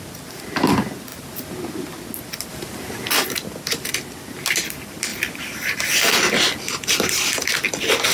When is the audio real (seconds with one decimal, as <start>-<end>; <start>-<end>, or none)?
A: 0.0-8.1